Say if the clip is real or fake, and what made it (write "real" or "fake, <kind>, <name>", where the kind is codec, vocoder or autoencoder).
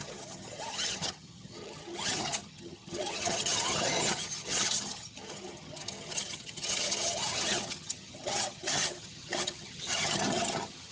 fake, vocoder, HiFi-GAN